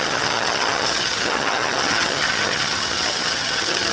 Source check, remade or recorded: remade